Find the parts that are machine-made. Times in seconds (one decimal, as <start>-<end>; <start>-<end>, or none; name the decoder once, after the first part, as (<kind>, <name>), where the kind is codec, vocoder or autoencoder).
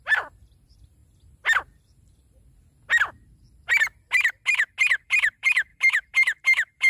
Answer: 0.0-1.0 (vocoder, BigVGAN v2); 1.6-2.7; 4.9-6.9